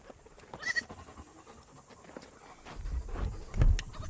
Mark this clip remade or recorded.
recorded